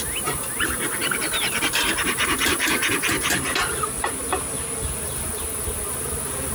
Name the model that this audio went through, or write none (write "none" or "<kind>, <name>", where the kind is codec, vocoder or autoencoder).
none